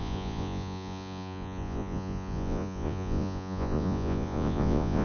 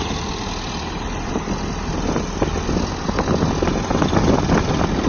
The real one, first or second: second